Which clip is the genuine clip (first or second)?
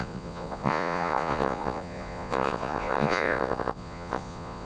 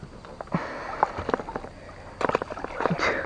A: second